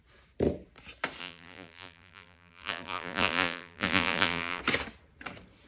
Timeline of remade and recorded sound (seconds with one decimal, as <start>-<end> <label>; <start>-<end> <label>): 0.0-1.2 recorded; 1.2-4.6 remade; 4.6-5.7 recorded